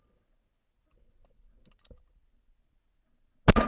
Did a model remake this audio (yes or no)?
no